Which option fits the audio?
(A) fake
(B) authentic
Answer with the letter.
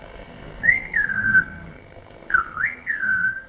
A